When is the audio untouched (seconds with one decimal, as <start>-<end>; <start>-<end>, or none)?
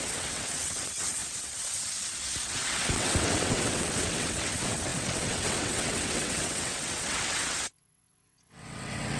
none